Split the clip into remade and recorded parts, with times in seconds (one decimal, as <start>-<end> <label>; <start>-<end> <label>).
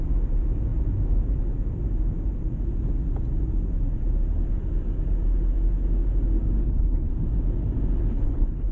0.0-6.6 recorded; 6.6-7.1 remade; 7.1-8.0 recorded; 8.0-8.7 remade